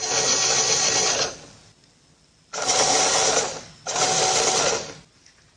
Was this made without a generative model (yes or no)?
yes